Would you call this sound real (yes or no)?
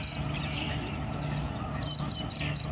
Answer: yes